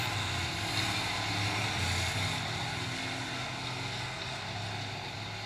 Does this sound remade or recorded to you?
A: recorded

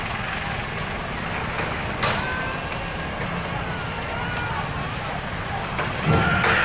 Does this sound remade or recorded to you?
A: recorded